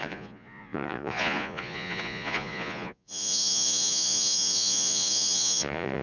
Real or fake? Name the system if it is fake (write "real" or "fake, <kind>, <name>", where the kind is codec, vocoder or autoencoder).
fake, vocoder, Vocos